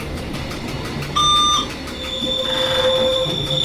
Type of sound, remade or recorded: recorded